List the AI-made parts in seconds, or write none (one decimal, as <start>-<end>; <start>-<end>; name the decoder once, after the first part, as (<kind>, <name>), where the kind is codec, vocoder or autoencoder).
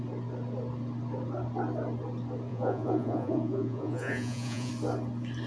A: 2.5-4.7 (vocoder, Vocos)